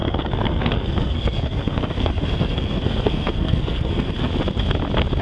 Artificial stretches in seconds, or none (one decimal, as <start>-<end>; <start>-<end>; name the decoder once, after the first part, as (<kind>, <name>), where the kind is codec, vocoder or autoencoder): 0.0-4.3 (codec, SNAC)

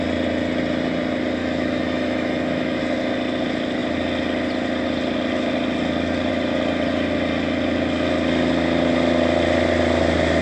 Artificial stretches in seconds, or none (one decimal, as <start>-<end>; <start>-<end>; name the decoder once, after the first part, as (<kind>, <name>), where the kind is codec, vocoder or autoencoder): 1.4-2.8 (autoencoder, DAC-VAE)

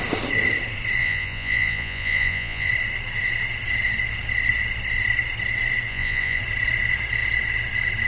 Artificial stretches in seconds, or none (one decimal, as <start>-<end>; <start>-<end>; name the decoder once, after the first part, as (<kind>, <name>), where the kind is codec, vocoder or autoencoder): 1.0-2.7 (vocoder, Vocos); 5.9-6.4

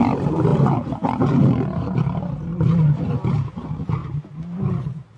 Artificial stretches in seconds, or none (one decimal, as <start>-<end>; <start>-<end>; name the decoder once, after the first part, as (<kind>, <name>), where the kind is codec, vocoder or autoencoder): none

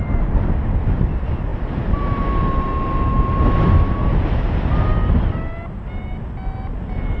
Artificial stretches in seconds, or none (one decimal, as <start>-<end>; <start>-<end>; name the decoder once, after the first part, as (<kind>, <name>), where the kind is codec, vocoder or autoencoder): none